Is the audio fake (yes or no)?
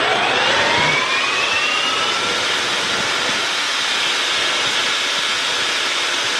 no